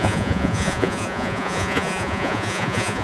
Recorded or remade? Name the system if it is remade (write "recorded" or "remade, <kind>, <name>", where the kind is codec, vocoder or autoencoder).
remade, vocoder, Vocos